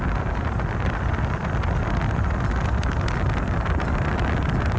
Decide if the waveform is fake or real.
real